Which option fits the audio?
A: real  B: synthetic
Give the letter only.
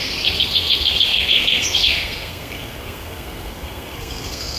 B